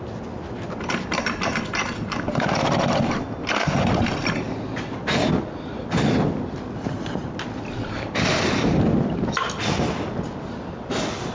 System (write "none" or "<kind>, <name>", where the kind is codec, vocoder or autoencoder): none